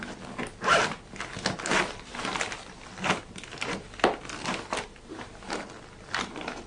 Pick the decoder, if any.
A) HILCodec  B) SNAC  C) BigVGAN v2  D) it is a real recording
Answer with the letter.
D